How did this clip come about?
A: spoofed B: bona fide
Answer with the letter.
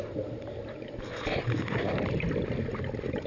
B